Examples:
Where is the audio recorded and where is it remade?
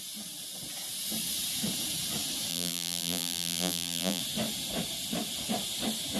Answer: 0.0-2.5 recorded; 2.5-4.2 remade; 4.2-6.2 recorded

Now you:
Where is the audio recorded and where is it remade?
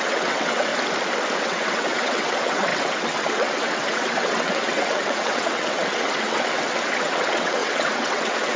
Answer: 0.0-0.7 remade; 0.7-1.4 recorded; 1.4-8.6 remade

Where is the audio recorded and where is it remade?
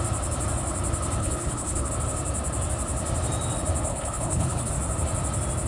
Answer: 0.0-1.2 recorded; 1.2-1.9 remade; 1.9-3.9 recorded; 3.9-4.7 remade; 4.7-5.7 recorded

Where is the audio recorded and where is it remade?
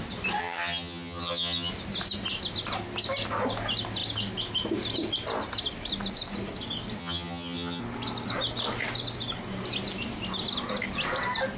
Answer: 0.0-0.4 recorded; 0.4-1.7 remade; 1.7-7.0 recorded; 7.0-7.8 remade; 7.8-11.6 recorded